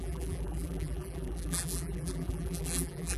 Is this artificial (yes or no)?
yes